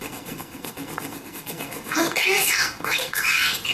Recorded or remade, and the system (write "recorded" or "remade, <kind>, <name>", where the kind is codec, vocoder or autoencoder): remade, codec, SNAC